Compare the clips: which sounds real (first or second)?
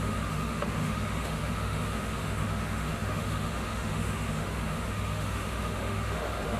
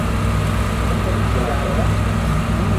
second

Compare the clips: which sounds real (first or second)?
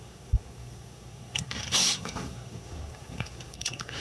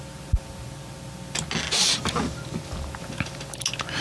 second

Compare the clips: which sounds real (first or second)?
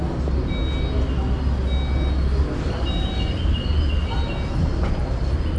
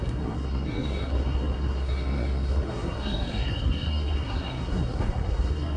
first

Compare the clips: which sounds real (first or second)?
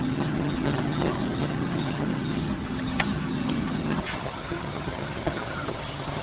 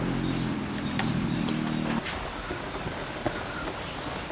second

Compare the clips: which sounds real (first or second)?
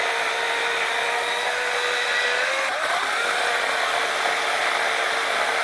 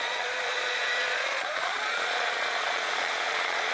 first